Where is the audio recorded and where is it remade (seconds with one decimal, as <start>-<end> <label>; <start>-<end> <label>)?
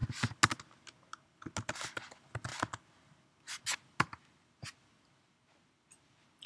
0.0-6.5 recorded